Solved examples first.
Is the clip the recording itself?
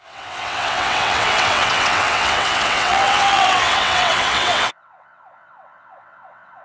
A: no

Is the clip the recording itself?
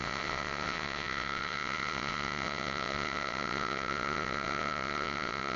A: no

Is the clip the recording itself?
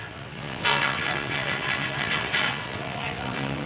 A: no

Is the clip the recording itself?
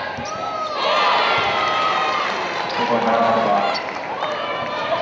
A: yes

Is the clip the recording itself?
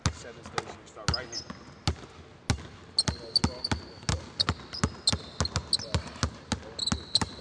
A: yes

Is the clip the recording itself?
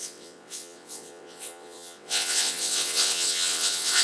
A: no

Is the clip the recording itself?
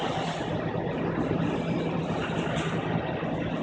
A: yes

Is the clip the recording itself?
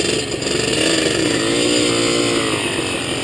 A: yes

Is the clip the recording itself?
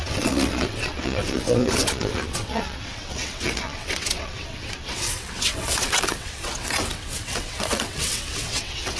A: no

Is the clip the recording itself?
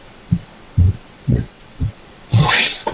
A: no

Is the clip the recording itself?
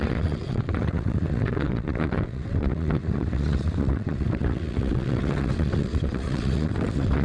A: no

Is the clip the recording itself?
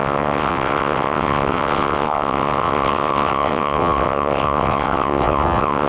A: no